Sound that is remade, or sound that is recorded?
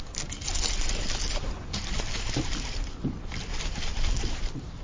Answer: recorded